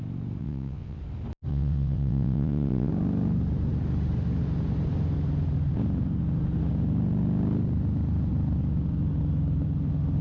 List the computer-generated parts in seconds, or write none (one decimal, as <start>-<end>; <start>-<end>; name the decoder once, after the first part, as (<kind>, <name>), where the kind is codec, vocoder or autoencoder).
0.4-1.0 (vocoder, WaveNeXt); 1.5-2.9